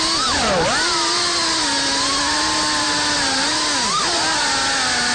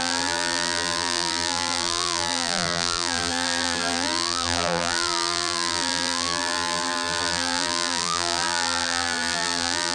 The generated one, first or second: second